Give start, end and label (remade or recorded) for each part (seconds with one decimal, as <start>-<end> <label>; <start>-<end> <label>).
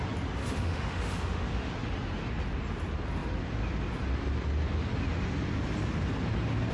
0.0-0.4 recorded; 0.4-1.7 remade; 1.7-6.7 recorded